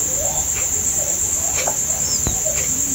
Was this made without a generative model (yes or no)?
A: yes